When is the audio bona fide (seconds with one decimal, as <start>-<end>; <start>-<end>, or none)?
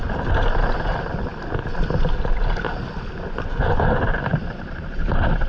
1.3-3.1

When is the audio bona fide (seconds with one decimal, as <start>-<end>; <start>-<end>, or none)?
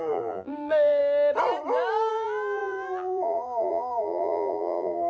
1.0-2.1